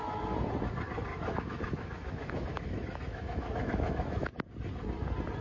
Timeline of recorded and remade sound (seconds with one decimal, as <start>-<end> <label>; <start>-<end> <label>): 0.0-1.1 recorded; 1.1-4.3 remade; 4.3-5.4 recorded